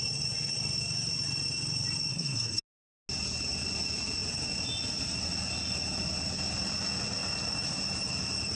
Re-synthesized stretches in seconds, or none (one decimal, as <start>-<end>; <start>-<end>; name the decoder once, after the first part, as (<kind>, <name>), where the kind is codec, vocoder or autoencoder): 2.1-2.6 (codec, SNAC)